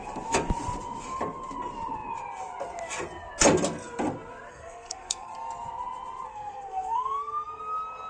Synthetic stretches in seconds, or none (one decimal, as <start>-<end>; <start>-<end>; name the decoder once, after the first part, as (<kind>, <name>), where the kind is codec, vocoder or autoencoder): 4.5-5.3 (codec, SNAC); 6.3-7.6

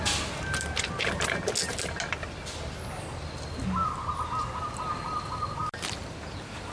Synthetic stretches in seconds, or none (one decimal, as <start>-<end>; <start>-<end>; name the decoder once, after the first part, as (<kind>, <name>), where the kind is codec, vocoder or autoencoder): none

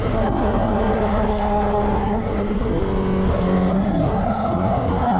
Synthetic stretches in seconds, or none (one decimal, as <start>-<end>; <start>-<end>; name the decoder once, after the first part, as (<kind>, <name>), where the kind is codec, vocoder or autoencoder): 0.0-2.8 (codec, SNAC); 3.7-5.2

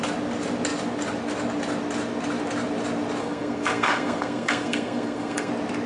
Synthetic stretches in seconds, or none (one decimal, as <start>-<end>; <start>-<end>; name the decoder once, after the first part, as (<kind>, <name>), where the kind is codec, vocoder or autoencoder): 3.2-5.5 (codec, SNAC)